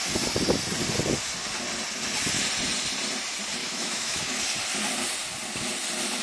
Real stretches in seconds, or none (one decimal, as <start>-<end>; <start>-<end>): 0.0-3.6; 4.4-6.2